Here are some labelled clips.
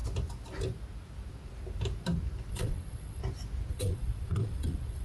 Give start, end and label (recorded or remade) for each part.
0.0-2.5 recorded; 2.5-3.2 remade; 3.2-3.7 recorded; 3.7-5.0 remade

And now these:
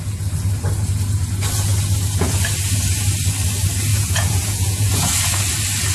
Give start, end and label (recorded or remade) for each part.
0.0-3.9 recorded; 3.9-5.1 remade; 5.1-5.9 recorded